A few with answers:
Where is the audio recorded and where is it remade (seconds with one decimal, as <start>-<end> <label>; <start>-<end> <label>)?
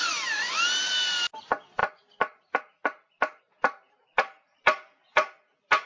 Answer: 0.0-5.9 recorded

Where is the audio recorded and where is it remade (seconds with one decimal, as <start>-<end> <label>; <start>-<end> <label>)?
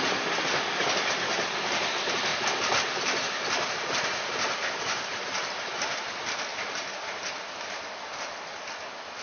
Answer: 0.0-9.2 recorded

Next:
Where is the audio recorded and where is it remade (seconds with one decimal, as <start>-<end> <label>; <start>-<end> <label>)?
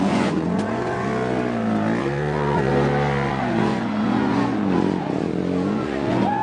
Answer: 0.0-1.1 remade; 1.1-2.0 recorded; 2.0-2.7 remade; 2.7-3.3 recorded; 3.3-6.4 remade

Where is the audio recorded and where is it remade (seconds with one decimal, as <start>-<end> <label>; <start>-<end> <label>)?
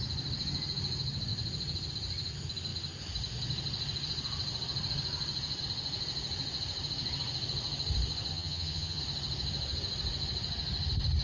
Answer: 0.0-8.3 recorded; 8.3-9.0 remade; 9.0-11.2 recorded